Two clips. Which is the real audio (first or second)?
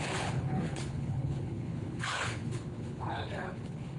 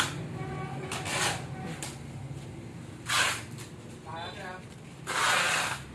second